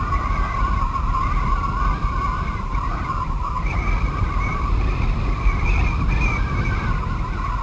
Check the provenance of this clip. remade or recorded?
recorded